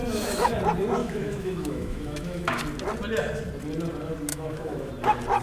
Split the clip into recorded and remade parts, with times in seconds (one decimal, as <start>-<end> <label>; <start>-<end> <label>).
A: 0.0-0.6 remade; 0.6-1.0 recorded; 1.0-2.6 remade; 2.6-4.3 recorded; 4.3-4.9 remade; 4.9-5.4 recorded